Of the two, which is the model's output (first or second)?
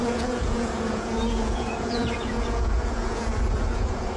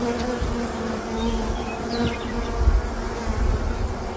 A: first